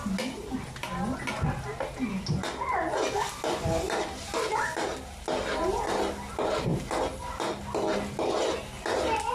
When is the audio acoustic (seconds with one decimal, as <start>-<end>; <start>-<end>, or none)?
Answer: 0.0-9.3